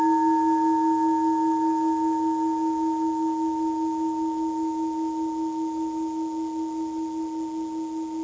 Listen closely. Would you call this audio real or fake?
real